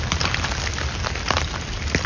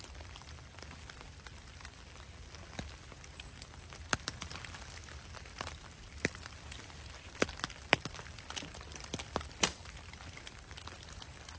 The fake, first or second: second